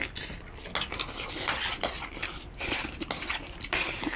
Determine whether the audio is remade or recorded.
recorded